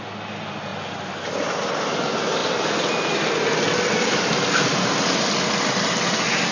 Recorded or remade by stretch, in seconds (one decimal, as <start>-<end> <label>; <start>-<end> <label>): 0.0-6.5 recorded